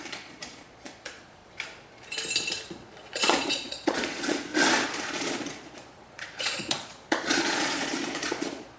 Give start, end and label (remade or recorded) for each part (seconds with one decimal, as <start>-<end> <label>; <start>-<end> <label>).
0.0-1.4 remade; 1.4-2.6 recorded; 2.6-4.5 remade; 4.5-5.1 recorded; 5.1-8.8 remade